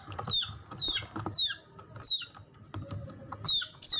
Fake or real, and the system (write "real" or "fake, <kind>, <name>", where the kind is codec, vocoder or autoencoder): real